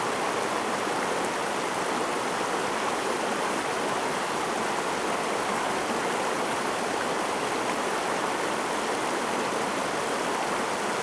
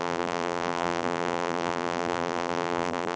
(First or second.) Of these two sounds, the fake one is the second